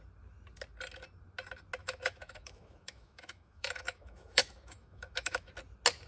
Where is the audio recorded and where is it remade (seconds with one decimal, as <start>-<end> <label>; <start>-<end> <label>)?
0.0-1.8 recorded; 1.8-5.5 remade; 5.5-6.1 recorded